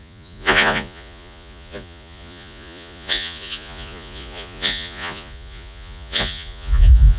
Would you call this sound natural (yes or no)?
no